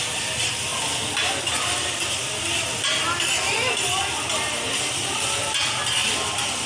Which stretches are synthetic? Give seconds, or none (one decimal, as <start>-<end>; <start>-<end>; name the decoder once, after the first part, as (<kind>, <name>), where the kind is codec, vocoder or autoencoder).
none